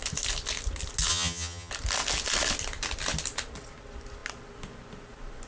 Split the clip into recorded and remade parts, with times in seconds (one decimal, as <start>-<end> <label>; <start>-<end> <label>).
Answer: 0.0-1.1 recorded; 1.1-1.7 remade; 1.7-5.5 recorded